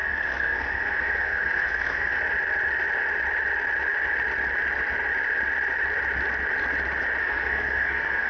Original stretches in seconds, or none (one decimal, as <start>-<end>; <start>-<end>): 2.2-7.2